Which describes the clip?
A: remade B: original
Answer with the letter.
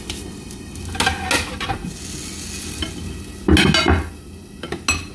B